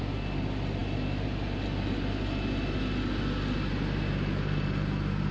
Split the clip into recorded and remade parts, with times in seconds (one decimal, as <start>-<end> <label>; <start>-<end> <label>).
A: 0.0-5.3 recorded